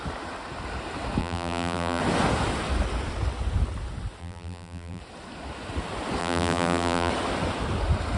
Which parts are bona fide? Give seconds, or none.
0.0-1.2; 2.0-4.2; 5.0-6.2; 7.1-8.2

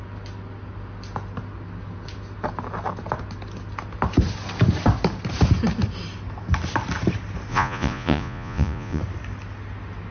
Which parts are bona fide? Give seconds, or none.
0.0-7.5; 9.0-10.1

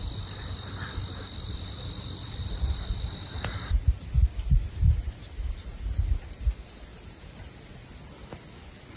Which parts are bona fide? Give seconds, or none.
0.0-9.0

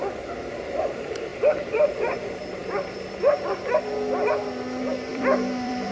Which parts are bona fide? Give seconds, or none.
0.0-1.3; 1.9-2.6; 3.2-5.1

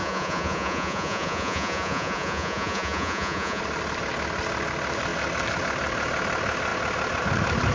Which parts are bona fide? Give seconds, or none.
3.6-7.7

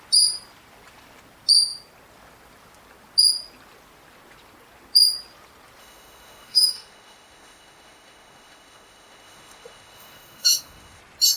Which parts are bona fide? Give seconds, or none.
0.0-5.8; 11.0-11.4